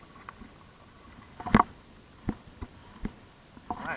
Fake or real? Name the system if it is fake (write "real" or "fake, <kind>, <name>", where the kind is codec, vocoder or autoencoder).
real